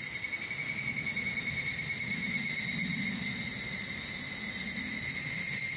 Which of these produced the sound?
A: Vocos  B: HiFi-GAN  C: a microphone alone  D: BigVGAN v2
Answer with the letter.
C